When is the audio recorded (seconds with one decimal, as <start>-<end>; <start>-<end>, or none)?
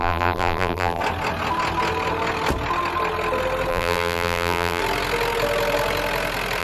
1.0-3.7; 4.8-6.6